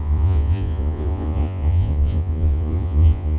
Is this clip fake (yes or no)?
yes